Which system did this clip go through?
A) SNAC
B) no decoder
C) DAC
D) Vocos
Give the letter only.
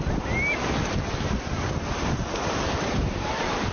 B